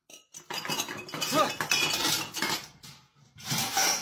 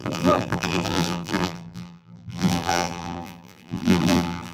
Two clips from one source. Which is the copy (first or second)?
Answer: second